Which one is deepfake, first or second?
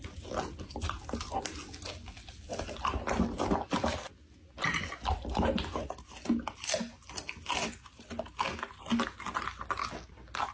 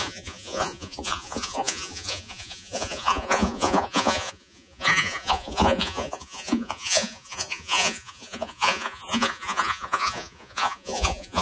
second